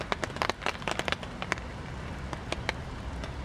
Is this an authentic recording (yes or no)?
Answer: yes